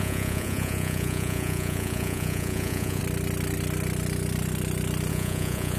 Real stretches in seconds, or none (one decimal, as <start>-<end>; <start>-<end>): 3.0-5.1